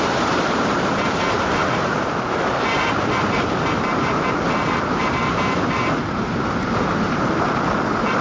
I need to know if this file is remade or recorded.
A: remade